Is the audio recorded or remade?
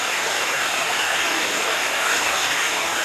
remade